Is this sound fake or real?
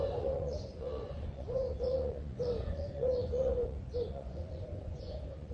fake